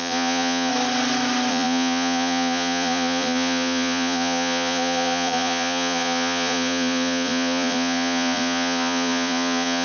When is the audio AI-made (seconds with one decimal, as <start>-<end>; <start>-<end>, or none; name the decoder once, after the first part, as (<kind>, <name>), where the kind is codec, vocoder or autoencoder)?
0.0-0.7 (vocoder, Vocos); 1.5-9.8